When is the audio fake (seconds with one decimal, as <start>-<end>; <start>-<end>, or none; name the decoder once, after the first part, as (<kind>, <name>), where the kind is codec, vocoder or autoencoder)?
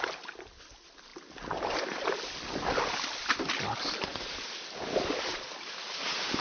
4.1-5.9 (vocoder, BigVGAN v2)